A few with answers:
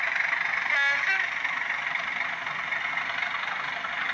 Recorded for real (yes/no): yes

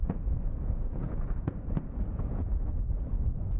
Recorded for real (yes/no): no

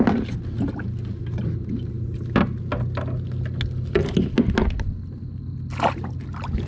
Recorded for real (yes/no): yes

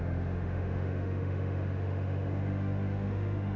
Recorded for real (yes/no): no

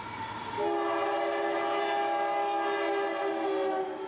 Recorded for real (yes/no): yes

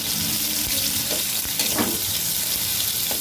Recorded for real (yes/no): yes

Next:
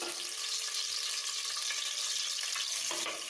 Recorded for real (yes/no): yes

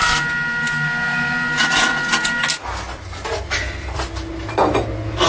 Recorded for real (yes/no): yes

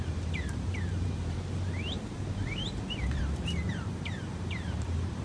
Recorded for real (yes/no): no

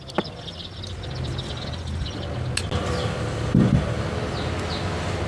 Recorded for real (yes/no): yes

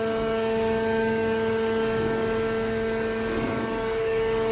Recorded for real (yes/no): no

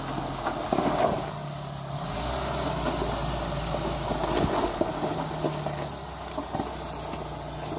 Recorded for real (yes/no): yes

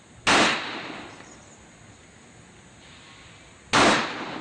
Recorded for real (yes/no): yes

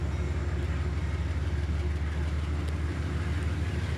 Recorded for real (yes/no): yes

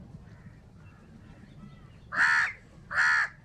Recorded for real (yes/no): yes